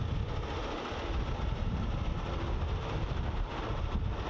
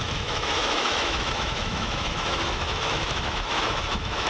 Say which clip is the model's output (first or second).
second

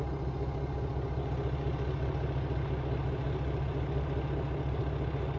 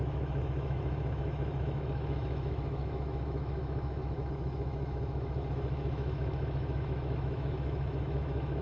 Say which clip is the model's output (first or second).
second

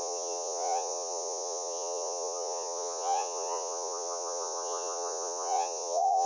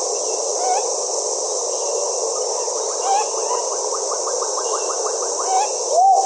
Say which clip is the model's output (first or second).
first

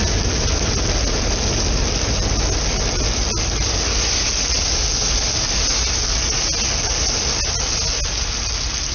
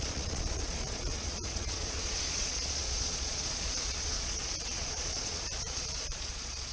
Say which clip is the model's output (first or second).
second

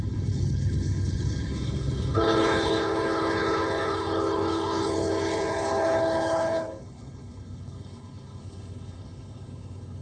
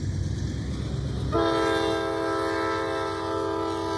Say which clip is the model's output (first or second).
first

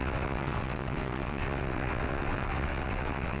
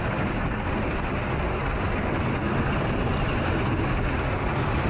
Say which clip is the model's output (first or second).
first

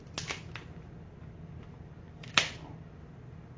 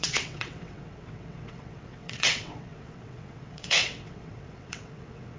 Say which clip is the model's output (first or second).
second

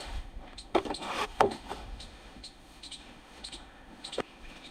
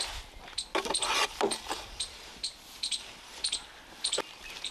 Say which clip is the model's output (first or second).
first